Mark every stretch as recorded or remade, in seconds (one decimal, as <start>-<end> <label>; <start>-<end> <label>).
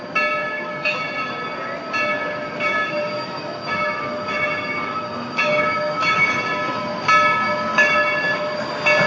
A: 0.0-0.4 recorded; 0.4-1.3 remade; 1.3-2.7 recorded; 2.7-6.8 remade; 6.8-7.7 recorded; 7.7-8.5 remade; 8.5-9.1 recorded